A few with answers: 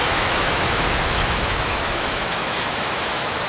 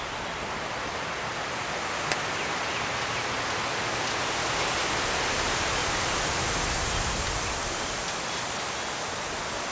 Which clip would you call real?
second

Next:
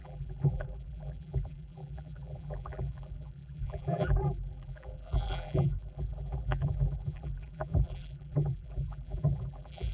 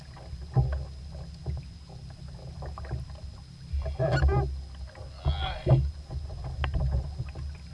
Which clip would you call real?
second